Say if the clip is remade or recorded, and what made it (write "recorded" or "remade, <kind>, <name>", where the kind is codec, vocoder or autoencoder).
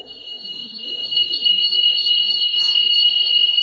remade, codec, SNAC